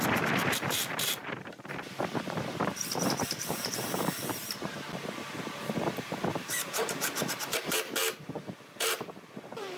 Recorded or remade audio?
remade